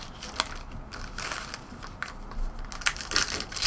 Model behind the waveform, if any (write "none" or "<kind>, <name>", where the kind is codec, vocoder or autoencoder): none